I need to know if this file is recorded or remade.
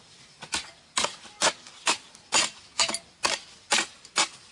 recorded